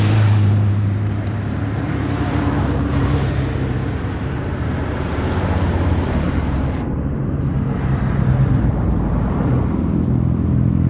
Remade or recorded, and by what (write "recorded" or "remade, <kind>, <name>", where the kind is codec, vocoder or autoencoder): remade, vocoder, BigVGAN v2